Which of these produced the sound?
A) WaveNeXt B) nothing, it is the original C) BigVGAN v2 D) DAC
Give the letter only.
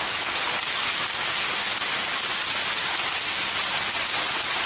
B